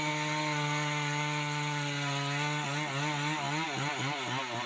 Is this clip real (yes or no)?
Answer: yes